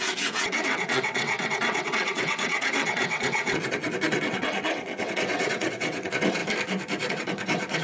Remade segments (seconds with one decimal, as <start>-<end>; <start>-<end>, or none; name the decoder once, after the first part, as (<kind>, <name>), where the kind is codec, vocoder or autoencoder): 0.0-6.4 (vocoder, WaveNeXt); 7.1-7.8